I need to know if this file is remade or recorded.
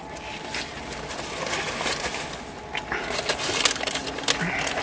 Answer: recorded